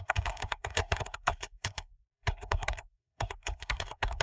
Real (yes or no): no